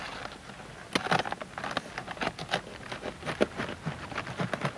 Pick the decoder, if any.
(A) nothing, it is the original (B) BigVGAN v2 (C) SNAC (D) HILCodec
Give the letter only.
A